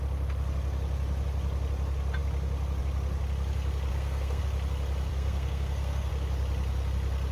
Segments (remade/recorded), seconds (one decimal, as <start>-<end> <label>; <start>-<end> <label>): 0.0-3.9 recorded; 3.9-4.4 remade; 4.4-5.1 recorded; 5.1-6.1 remade; 6.1-7.3 recorded